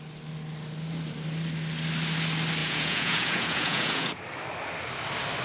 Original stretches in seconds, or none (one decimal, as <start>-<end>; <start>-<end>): 0.0-2.6; 4.2-5.4